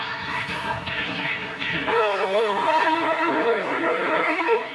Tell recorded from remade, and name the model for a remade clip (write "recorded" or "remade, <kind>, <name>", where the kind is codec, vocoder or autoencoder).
remade, codec, SNAC